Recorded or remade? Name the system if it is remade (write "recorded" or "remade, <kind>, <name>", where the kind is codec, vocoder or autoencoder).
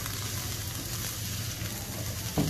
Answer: recorded